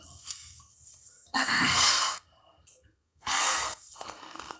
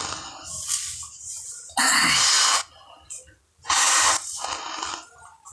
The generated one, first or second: first